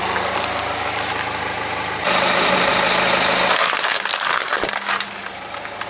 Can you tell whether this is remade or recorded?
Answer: recorded